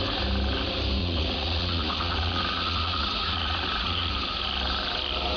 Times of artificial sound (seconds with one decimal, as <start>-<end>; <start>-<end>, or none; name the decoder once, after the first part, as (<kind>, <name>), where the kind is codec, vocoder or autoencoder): 1.0-4.1 (vocoder, Vocos)